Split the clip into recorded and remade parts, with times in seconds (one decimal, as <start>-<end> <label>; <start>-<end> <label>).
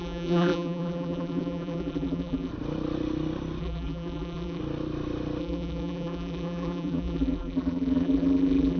0.0-2.5 remade; 2.5-3.6 recorded; 3.6-4.6 remade; 4.6-5.4 recorded; 5.4-8.8 remade